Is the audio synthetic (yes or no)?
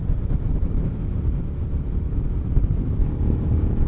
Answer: no